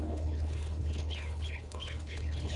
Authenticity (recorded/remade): remade